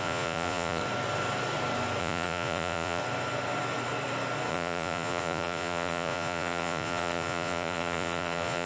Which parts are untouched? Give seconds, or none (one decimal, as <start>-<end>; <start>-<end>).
0.8-2.0; 3.0-4.5

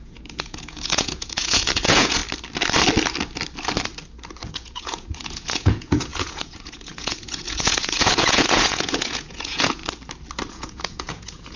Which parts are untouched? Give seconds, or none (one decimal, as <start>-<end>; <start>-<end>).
2.2-4.5; 9.8-10.5